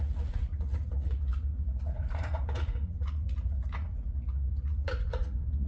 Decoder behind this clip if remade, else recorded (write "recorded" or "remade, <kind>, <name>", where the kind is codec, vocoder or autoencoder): remade, vocoder, Vocos